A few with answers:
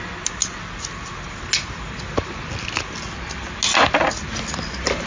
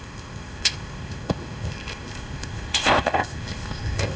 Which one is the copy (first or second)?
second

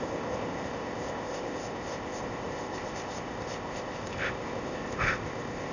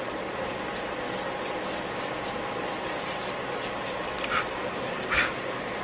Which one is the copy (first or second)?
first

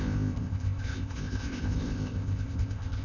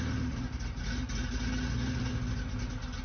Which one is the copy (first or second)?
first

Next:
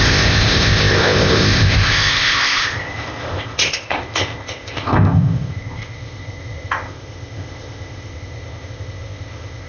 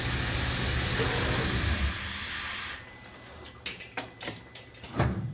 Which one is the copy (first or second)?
first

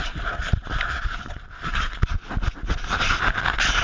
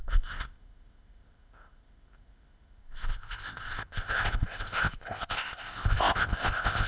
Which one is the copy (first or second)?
second